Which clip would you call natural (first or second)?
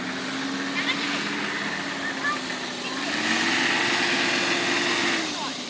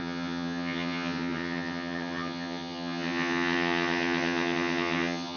first